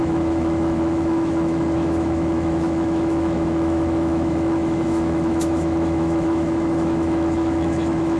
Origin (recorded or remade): remade